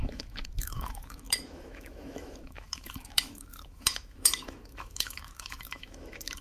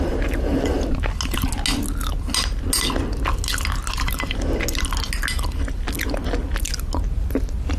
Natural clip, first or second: second